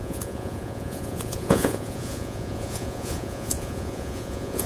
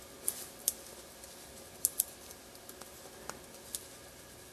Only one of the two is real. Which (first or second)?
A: second